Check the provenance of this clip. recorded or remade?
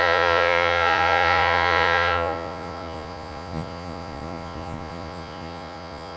remade